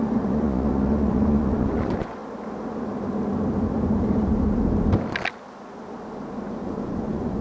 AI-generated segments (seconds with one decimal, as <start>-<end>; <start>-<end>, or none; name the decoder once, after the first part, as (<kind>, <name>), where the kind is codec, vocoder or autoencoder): 0.0-2.2 (vocoder, Vocos); 6.6-7.4